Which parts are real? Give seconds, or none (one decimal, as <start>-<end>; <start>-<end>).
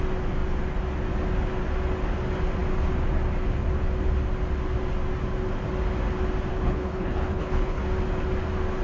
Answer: 0.0-6.5; 7.8-8.8